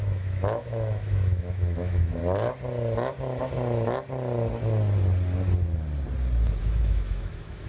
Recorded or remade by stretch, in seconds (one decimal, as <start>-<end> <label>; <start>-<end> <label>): 0.0-2.2 remade; 2.2-6.6 recorded; 6.6-7.7 remade